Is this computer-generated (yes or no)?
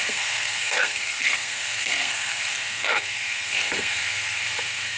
yes